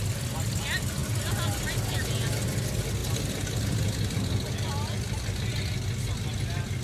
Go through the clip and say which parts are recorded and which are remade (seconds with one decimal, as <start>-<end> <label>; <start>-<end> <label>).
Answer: 0.0-6.8 recorded